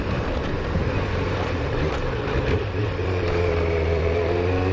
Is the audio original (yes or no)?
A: no